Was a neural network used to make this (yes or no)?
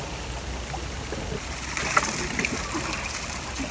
no